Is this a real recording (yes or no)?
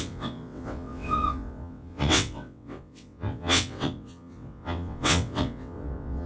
no